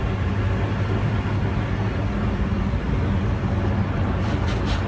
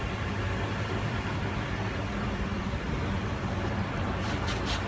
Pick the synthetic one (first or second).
second